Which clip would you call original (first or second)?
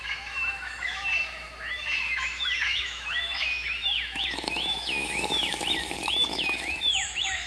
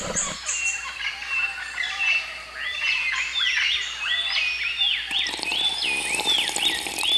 second